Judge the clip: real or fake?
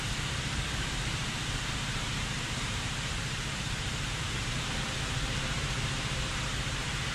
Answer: fake